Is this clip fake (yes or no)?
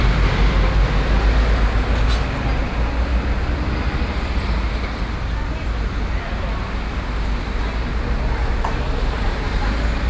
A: no